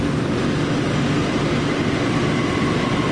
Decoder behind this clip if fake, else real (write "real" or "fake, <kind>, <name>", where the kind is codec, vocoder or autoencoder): real